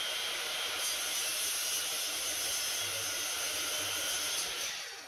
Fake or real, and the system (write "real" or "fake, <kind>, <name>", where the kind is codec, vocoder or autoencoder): real